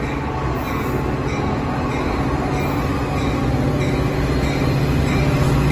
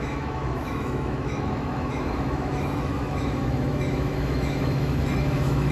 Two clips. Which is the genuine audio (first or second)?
first